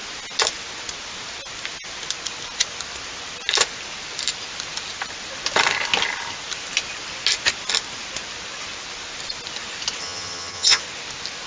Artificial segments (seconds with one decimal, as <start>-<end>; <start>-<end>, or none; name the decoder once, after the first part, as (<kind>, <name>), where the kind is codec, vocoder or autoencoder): 10.0-10.8 (vocoder, HiFi-GAN)